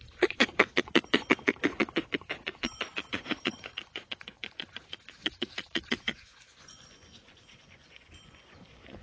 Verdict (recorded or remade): remade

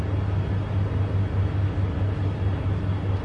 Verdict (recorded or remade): recorded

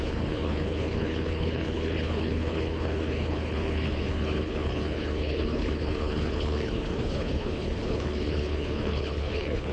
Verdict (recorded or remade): remade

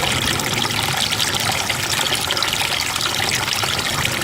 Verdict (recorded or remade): recorded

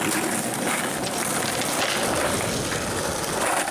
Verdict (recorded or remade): recorded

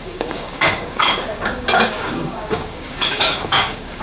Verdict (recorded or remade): remade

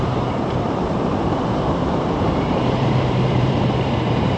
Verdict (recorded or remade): remade